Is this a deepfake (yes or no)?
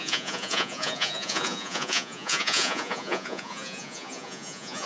yes